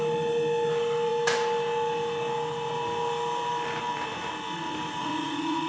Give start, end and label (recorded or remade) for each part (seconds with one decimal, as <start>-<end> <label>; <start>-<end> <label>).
0.0-5.0 recorded; 5.0-5.7 remade